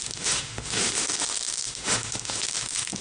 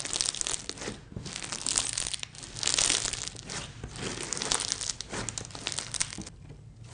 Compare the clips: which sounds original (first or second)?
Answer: second